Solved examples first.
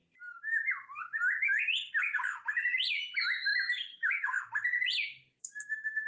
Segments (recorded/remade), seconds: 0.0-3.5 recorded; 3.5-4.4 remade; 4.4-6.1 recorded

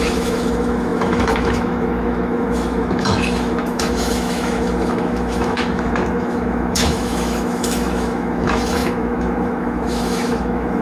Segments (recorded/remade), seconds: 0.0-10.8 remade